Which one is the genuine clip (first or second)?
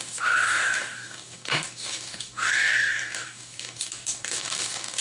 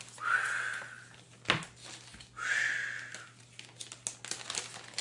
second